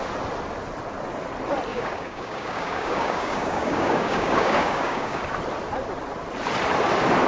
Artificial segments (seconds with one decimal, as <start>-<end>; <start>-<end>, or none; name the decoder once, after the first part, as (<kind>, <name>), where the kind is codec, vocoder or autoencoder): 1.7-5.2 (codec, DAC)